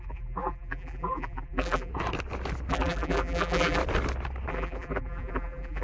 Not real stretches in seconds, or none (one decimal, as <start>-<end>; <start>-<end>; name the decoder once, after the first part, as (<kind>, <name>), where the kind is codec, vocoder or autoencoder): 0.0-1.9 (vocoder, BigVGAN v2); 2.7-3.8; 4.5-5.8